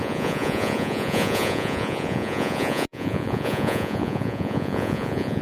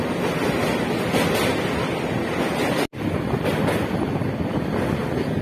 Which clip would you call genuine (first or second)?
second